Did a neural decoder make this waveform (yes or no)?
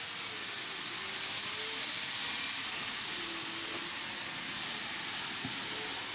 no